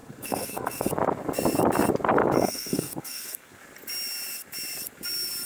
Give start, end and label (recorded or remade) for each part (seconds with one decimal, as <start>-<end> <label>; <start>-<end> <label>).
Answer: 0.0-0.9 remade; 0.9-2.2 recorded; 2.2-3.6 remade; 3.6-5.5 recorded